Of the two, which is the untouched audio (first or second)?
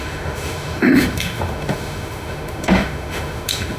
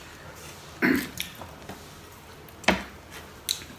second